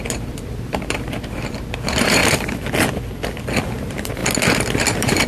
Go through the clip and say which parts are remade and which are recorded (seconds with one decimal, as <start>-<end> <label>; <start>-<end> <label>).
0.0-2.2 remade; 2.2-3.8 recorded; 3.8-4.2 remade; 4.2-4.8 recorded; 4.8-5.3 remade